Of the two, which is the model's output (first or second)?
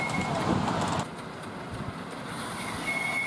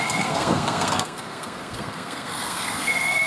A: second